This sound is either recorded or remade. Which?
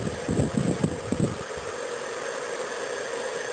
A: recorded